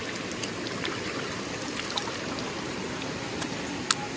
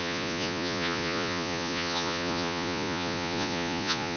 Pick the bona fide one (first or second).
first